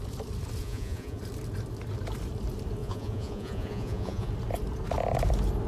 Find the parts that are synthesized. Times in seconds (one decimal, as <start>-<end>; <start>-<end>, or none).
0.6-1.2; 2.8-4.3